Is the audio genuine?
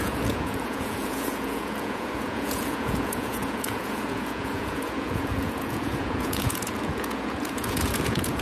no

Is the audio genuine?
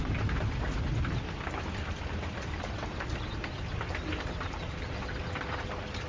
yes